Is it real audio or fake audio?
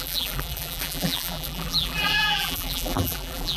fake